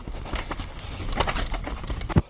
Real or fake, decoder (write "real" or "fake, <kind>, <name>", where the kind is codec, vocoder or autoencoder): real